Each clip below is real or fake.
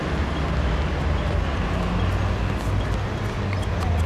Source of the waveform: real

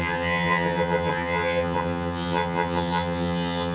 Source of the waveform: fake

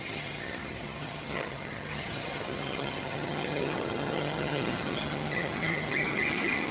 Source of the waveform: fake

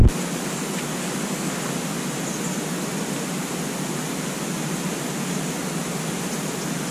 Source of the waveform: real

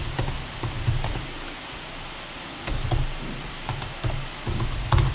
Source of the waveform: real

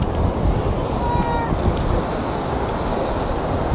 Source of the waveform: real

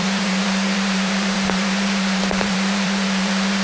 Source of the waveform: fake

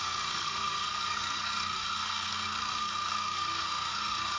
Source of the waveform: fake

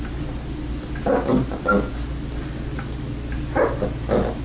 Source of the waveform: real